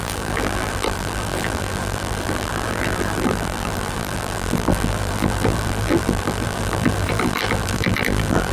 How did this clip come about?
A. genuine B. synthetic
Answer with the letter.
B